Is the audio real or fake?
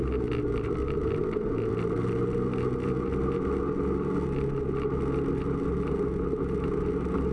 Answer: real